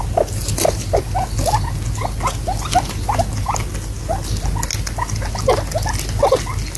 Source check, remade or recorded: recorded